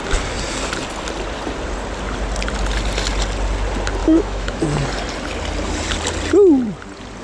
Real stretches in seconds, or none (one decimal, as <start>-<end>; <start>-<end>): 0.0-4.0; 4.6-7.2